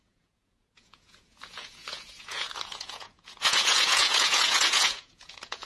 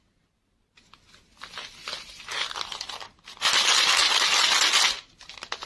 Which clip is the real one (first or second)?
second